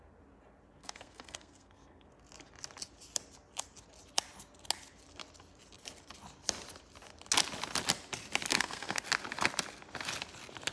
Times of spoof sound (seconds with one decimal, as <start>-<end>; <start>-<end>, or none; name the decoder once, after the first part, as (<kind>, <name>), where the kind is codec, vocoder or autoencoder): 0.8-2.1 (codec, SNAC); 8.5-9.0